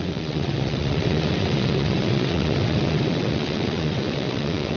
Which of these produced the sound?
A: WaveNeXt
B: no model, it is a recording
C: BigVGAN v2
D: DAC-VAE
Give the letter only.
A